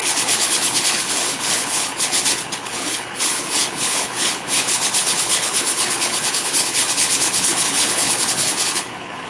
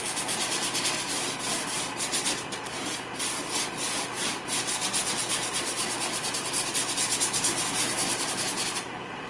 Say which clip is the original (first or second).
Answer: second